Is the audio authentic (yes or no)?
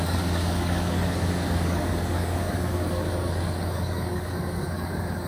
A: no